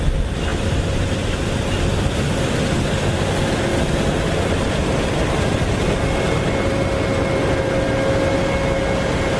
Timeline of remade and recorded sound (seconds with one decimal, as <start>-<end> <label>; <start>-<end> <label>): 0.0-3.7 recorded; 3.7-6.0 remade; 6.0-9.4 recorded